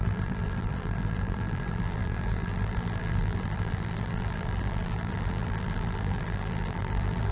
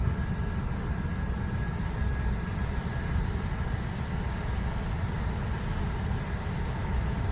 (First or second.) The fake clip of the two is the first